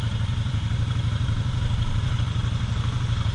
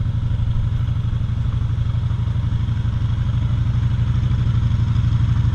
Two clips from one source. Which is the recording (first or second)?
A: second